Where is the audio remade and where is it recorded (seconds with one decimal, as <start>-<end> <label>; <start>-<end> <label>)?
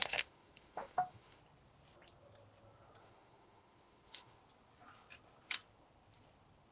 0.0-1.4 remade; 1.4-3.0 recorded; 3.0-4.4 remade; 4.4-6.7 recorded